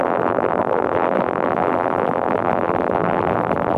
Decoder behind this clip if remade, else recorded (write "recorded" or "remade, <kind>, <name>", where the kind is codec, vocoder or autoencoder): remade, vocoder, BigVGAN v2